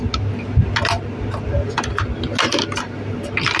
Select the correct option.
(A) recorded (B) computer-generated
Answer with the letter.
A